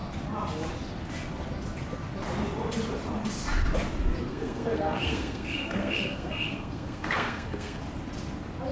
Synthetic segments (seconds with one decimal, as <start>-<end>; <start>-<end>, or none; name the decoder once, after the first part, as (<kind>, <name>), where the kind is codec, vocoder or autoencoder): 4.3-7.8 (codec, SNAC)